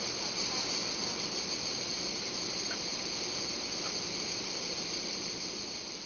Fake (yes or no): no